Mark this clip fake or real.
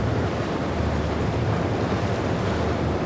real